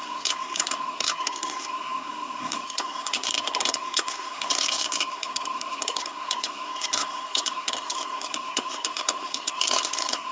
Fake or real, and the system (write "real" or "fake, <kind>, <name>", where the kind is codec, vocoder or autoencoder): fake, codec, SNAC